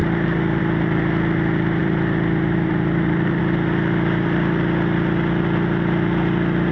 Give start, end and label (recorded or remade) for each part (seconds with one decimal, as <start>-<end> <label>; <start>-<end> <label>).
0.0-0.6 remade; 0.6-1.8 recorded; 1.8-3.4 remade; 3.4-6.7 recorded